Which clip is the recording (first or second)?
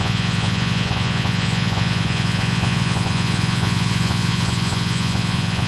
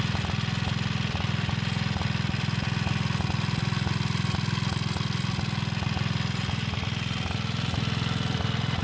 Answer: second